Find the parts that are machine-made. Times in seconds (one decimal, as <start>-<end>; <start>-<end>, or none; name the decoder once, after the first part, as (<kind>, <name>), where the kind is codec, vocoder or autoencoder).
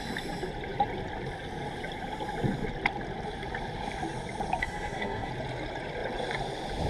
4.6-5.3 (codec, SNAC)